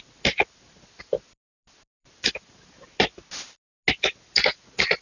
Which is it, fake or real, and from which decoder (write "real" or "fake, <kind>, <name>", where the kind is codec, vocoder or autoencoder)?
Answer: real